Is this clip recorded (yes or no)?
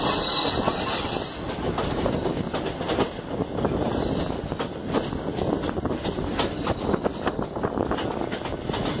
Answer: yes